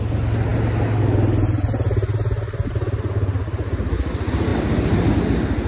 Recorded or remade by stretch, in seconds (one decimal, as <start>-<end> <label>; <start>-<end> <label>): 0.0-5.7 recorded